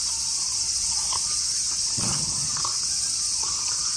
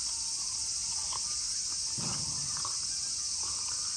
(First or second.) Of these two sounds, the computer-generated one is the first